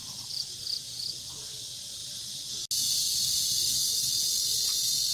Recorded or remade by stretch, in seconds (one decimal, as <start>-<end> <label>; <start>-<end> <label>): 0.0-1.1 remade; 1.1-5.1 recorded